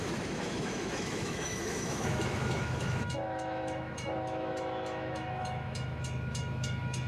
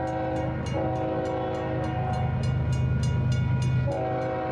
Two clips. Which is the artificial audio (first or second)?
first